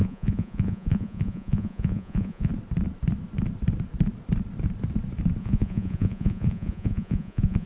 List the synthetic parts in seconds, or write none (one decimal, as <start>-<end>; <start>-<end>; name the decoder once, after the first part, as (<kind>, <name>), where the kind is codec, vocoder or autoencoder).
0.0-2.5 (vocoder, Vocos); 5.4-7.7